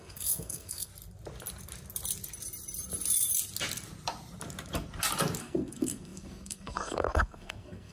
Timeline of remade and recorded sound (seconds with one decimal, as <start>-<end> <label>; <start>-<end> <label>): 0.0-0.9 remade; 0.9-5.4 recorded; 5.4-7.9 remade